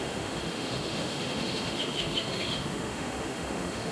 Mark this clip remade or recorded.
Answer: remade